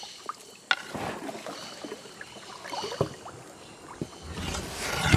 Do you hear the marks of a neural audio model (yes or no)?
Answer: no